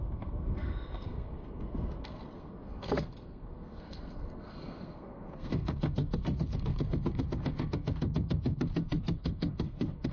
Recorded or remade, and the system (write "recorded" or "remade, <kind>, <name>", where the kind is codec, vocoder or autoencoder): remade, codec, SNAC